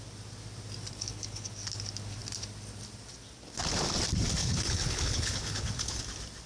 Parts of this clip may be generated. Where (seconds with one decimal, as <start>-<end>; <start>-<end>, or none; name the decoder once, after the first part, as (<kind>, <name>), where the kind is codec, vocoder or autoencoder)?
0.9-1.5 (codec, HILCodec); 4.4-6.0